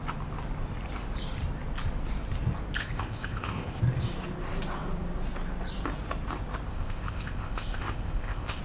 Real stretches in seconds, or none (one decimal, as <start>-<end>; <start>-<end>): 0.0-2.8; 3.8-6.7